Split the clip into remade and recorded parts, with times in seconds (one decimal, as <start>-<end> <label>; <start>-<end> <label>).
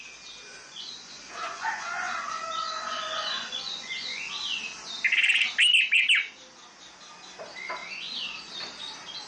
0.0-0.5 recorded; 0.5-4.6 remade; 4.6-7.8 recorded; 7.8-8.5 remade; 8.5-9.3 recorded